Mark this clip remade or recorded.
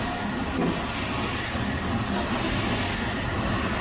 recorded